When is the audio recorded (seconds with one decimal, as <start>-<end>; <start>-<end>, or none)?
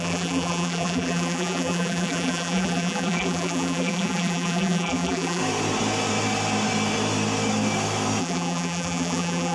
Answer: 5.4-8.2